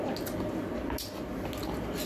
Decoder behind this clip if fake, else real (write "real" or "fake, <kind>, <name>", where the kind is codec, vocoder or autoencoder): real